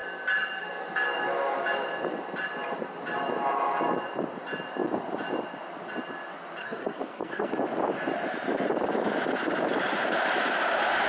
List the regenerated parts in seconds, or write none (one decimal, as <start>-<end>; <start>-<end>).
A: 6.6-7.5